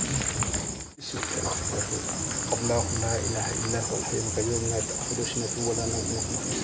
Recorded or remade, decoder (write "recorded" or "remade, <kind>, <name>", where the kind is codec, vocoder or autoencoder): recorded